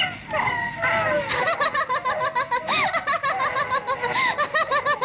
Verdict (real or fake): real